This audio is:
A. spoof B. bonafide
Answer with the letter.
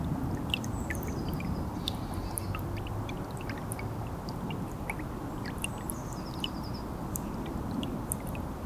B